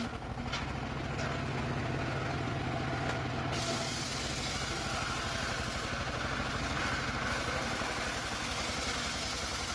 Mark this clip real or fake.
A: real